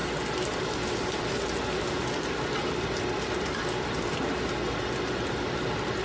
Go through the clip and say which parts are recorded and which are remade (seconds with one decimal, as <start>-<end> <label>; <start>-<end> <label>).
0.0-1.9 recorded; 1.9-6.0 remade